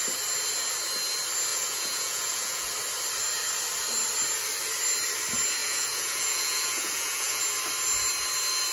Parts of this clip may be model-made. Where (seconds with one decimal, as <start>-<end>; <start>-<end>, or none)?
1.5-2.7; 5.6-7.4